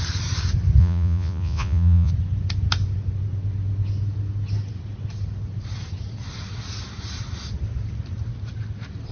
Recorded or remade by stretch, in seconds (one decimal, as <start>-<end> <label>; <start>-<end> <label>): 0.0-0.8 recorded; 0.8-2.1 remade; 2.1-9.1 recorded